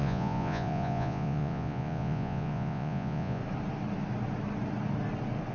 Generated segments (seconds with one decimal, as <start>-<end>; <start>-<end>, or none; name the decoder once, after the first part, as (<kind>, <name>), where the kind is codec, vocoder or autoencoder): 0.0-3.4 (vocoder, Vocos)